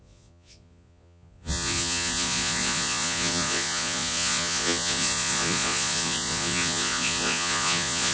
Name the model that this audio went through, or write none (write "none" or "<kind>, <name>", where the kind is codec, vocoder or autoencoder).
vocoder, Vocos